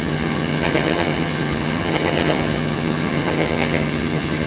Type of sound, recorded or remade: remade